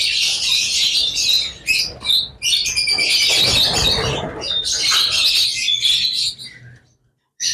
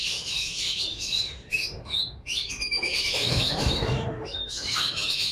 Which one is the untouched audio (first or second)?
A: first